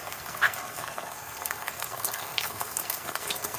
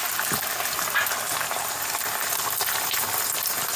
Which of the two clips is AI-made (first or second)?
first